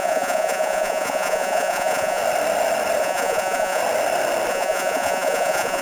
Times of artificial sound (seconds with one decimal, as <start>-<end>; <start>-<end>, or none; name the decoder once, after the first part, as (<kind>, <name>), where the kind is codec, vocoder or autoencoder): 0.0-2.2 (vocoder, Vocos); 3.0-3.8; 4.5-5.8